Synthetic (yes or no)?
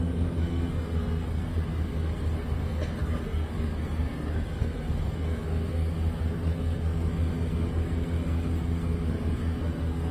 yes